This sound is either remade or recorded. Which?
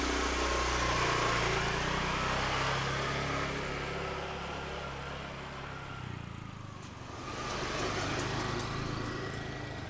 recorded